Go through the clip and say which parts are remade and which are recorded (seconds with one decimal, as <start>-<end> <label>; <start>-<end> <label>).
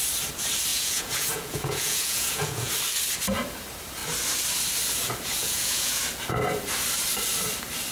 0.0-0.7 recorded; 0.7-2.7 remade; 2.7-5.4 recorded; 5.4-6.0 remade; 6.0-7.9 recorded